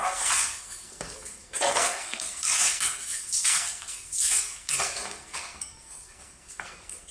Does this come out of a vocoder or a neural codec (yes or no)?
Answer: yes